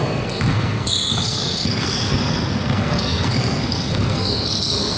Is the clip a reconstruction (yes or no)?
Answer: yes